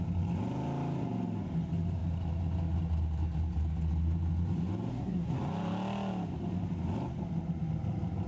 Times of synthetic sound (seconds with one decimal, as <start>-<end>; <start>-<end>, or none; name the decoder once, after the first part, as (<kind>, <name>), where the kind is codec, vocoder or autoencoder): 4.9-5.4 (codec, SNAC)